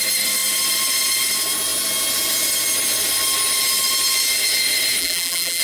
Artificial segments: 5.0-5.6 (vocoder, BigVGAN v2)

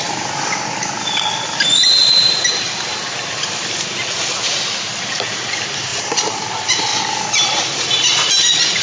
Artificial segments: 0.0-6.9 (vocoder, BigVGAN v2); 8.3-8.8